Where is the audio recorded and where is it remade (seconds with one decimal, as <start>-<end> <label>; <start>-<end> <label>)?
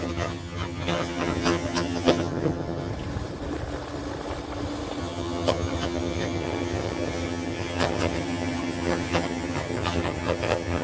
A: 0.0-2.9 remade; 2.9-5.0 recorded; 5.0-10.8 remade